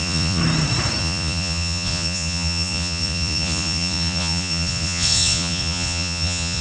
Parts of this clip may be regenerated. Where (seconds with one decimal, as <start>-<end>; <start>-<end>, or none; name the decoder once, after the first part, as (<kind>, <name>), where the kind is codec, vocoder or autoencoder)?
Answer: 0.0-0.4 (vocoder, Vocos); 1.0-6.6